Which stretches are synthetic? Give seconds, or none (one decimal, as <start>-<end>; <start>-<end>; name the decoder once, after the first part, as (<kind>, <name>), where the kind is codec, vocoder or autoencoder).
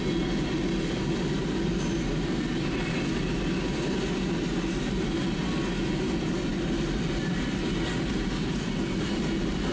none